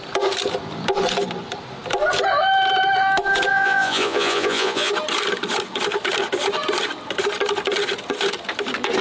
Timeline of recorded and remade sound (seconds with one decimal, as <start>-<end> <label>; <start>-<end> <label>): 0.0-3.5 recorded; 3.5-4.9 remade; 4.9-9.0 recorded

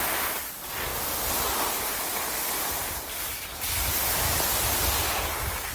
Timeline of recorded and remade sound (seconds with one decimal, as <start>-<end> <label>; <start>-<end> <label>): 0.0-5.7 recorded

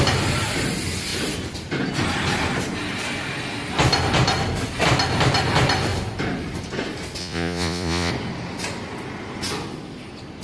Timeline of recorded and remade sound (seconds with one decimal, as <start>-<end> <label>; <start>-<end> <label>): 0.0-7.2 recorded; 7.2-8.1 remade; 8.1-10.4 recorded

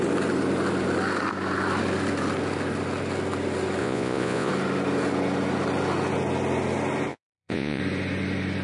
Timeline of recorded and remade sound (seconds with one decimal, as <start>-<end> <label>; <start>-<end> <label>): 0.0-3.8 recorded; 3.8-4.5 remade; 4.5-7.1 recorded; 7.1-7.8 remade; 7.8-8.6 recorded

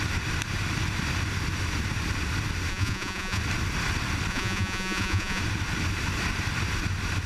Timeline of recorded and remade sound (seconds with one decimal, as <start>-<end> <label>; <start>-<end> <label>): 0.0-2.7 recorded; 2.7-3.4 remade; 3.4-4.3 recorded; 4.3-5.4 remade; 5.4-7.3 recorded